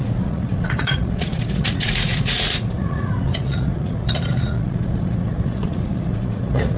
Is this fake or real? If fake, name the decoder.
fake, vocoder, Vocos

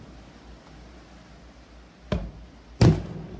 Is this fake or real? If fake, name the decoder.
real